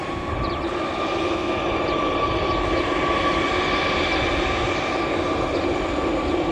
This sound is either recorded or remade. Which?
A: recorded